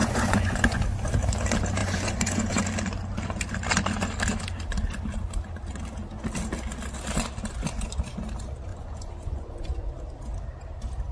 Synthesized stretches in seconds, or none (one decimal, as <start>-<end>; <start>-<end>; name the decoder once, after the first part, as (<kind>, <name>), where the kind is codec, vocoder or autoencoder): 0.0-0.8 (vocoder, Vocos); 1.8-2.6; 8.7-9.9